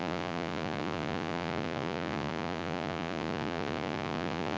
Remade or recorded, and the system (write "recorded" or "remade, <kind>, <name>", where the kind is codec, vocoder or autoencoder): remade, vocoder, Vocos